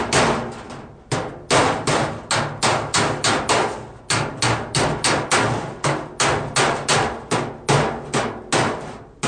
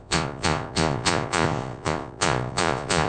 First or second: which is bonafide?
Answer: first